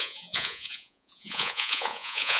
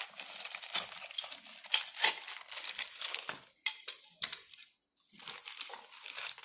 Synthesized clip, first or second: first